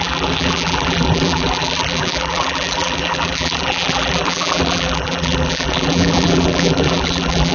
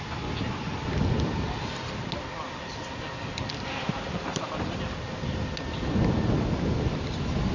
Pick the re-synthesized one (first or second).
first